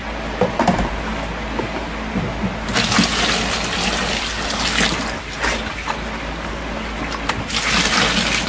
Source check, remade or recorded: recorded